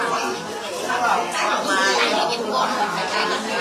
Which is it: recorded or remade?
recorded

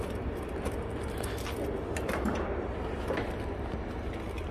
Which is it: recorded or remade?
recorded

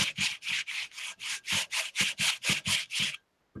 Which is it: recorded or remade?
recorded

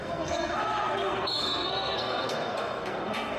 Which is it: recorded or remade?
remade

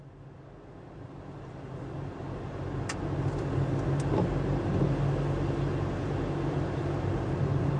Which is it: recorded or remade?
recorded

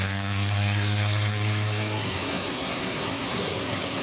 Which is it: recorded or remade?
remade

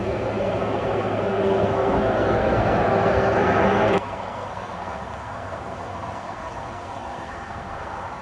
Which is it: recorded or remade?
remade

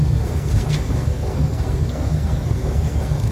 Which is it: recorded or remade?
remade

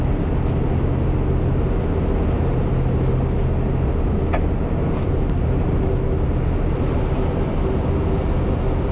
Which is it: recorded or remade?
recorded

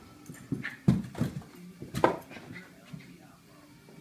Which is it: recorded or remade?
recorded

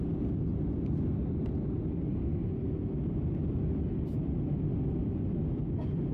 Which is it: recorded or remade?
recorded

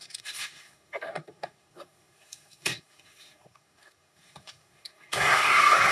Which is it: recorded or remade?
remade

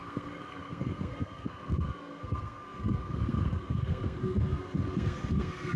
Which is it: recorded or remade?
remade